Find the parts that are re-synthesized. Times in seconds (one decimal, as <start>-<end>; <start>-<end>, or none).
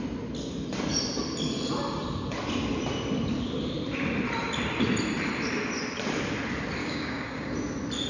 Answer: 6.8-7.5